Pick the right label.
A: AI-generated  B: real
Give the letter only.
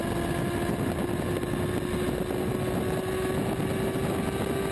B